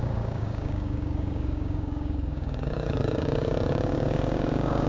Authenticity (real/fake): fake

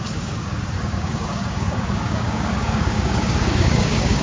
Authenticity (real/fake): fake